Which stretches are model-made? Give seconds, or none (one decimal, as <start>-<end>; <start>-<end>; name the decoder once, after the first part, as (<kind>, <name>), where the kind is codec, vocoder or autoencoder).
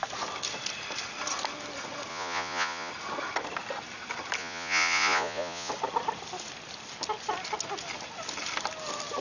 2.1-2.9 (vocoder, Vocos); 4.4-5.7